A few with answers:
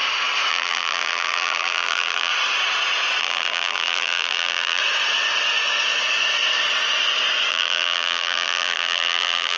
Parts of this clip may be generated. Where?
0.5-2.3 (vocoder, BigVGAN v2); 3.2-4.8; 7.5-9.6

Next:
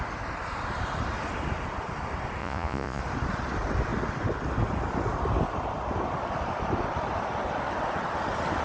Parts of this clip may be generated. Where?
2.4-3.0 (vocoder, Vocos)

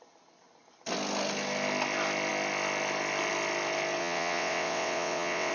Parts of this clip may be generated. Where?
4.0-5.5 (vocoder, WaveNeXt)

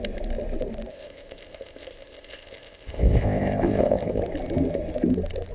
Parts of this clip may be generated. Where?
0.9-4.2 (codec, ZipCodec)

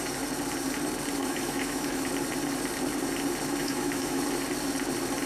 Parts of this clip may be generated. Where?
1.2-2.1 (autoencoder, DAC-VAE); 3.6-4.2

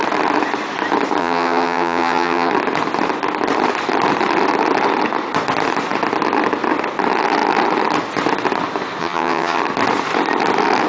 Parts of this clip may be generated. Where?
1.2-2.5 (vocoder, HiFi-GAN); 9.0-9.6

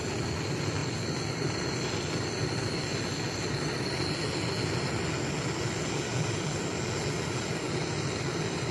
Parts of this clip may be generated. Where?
none